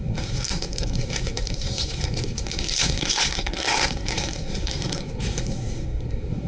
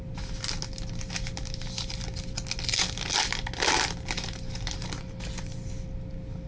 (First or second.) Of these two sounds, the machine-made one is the first